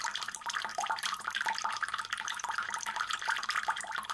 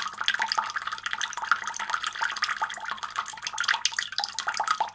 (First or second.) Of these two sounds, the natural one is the second